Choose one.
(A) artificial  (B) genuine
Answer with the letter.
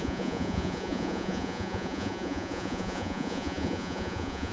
A